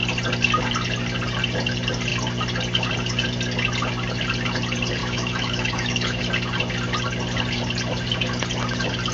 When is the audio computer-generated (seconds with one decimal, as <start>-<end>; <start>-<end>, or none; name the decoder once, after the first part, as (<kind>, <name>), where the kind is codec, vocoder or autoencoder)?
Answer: 5.0-6.2 (autoencoder, DAC-VAE)